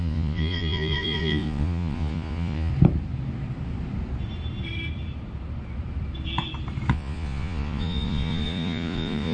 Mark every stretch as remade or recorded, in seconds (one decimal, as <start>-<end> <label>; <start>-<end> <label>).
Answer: 0.0-2.7 remade; 2.7-6.9 recorded; 6.9-9.3 remade